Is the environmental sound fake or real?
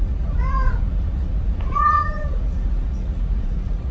fake